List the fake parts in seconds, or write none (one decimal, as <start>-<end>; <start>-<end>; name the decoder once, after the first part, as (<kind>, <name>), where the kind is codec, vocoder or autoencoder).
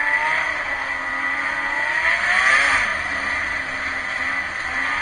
none